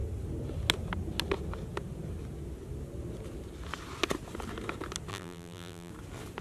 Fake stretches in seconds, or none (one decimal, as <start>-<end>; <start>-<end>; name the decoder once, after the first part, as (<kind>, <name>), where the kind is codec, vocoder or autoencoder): 5.1-5.9 (vocoder, BigVGAN v2)